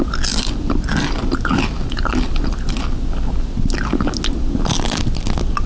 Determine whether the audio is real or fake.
real